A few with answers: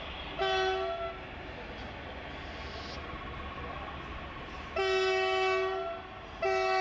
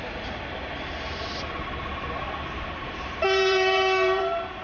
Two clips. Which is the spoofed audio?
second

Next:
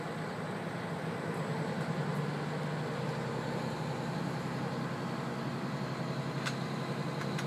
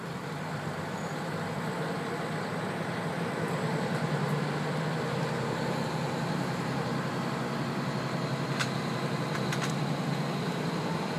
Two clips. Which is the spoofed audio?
second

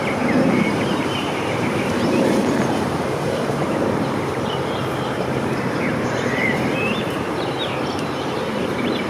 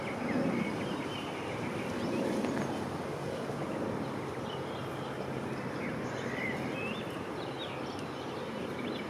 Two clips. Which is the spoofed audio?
first